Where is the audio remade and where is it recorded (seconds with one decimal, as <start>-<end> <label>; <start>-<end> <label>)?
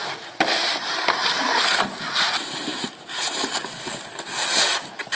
0.0-1.2 recorded; 1.2-4.3 remade; 4.3-5.1 recorded